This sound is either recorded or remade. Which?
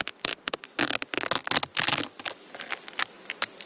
recorded